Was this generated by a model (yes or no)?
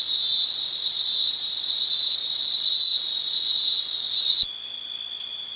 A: yes